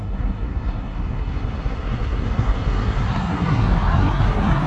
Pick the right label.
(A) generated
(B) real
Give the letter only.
A